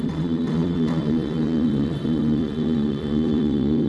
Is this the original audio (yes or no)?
no